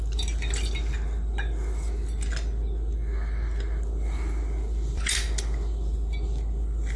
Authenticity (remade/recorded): recorded